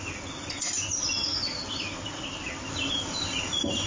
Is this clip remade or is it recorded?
recorded